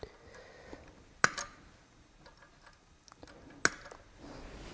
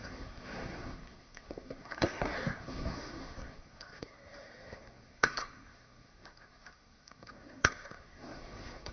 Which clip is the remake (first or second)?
second